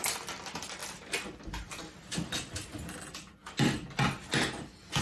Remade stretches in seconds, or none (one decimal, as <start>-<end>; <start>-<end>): none